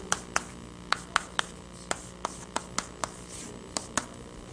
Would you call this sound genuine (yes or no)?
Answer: yes